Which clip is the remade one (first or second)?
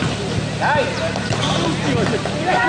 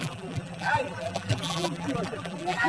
second